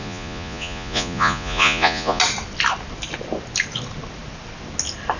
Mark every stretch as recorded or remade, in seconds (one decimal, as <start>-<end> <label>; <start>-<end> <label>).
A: 0.0-2.2 remade; 2.2-5.2 recorded